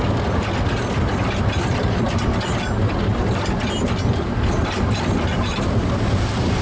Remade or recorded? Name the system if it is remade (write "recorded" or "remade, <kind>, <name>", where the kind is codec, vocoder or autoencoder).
recorded